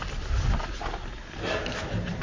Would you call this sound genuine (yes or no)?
yes